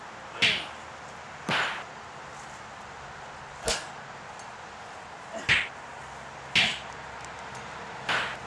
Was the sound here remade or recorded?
recorded